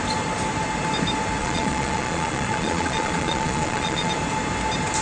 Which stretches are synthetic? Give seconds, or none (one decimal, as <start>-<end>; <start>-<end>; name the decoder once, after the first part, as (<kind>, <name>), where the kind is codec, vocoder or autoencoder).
1.4-4.1 (vocoder, Vocos)